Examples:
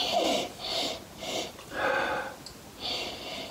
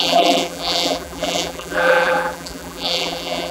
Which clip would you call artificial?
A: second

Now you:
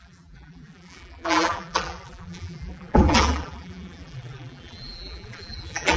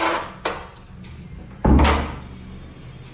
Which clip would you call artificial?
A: first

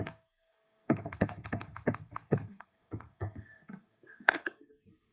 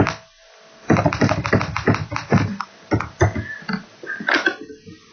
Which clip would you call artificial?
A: first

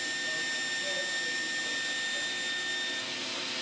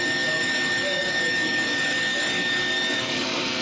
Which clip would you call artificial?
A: second